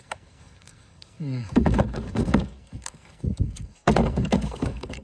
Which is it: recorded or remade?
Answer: remade